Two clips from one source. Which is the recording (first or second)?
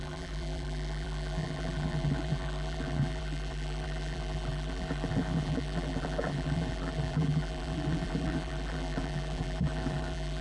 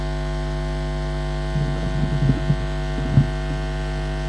second